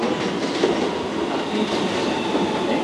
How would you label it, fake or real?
real